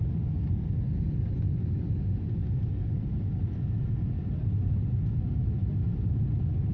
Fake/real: real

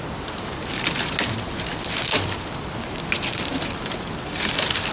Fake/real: real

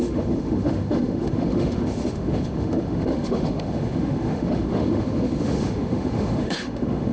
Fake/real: fake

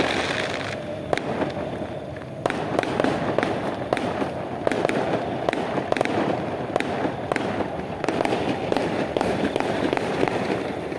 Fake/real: real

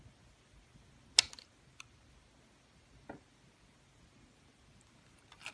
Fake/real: real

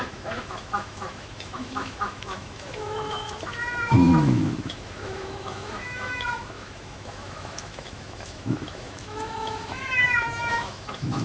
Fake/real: fake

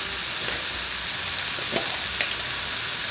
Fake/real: real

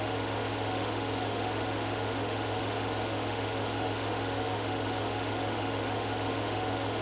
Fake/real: fake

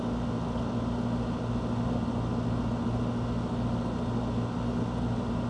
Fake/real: real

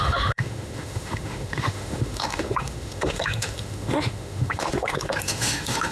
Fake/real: fake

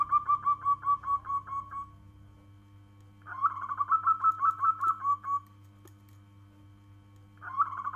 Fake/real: real